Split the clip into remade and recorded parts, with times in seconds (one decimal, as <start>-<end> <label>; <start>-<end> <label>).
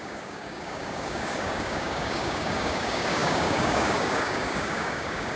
0.0-5.4 remade